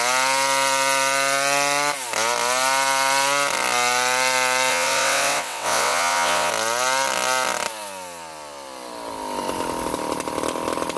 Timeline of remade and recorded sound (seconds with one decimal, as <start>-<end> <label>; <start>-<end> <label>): 0.0-4.7 recorded; 4.7-6.5 remade; 6.5-11.0 recorded